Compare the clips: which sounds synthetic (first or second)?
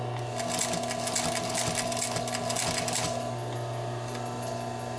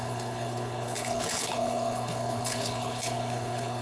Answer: second